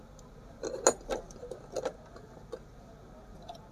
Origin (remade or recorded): recorded